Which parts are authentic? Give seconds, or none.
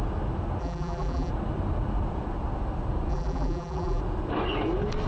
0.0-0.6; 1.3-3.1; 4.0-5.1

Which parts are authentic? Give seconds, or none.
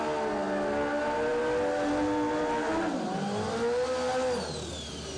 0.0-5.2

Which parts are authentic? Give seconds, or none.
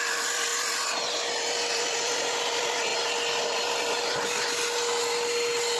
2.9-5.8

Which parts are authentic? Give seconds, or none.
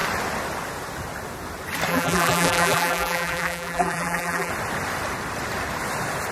0.0-1.9; 4.5-6.3